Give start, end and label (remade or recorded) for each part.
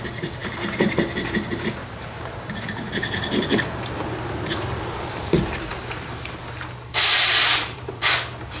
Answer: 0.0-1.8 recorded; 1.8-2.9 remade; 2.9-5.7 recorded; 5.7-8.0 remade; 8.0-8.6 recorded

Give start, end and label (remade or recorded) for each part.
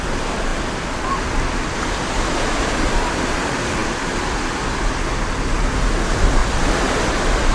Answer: 0.0-6.4 recorded; 6.4-7.5 remade